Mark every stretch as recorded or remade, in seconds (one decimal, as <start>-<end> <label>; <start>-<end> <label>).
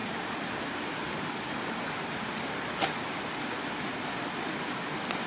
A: 0.0-5.3 recorded